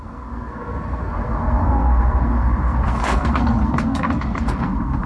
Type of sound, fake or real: fake